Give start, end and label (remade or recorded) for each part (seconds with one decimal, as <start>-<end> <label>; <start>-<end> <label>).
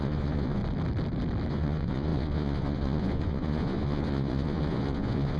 0.0-0.6 remade; 0.6-1.5 recorded; 1.5-5.4 remade